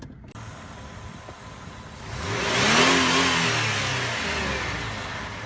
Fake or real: real